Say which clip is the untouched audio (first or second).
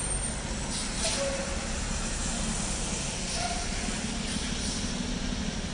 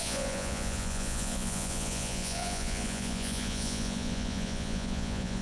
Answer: first